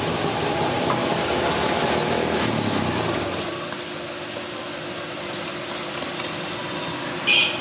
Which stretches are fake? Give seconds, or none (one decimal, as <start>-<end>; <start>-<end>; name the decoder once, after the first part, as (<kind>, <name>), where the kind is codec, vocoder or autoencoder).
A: none